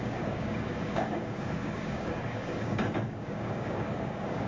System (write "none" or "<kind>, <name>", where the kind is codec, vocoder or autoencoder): codec, DAC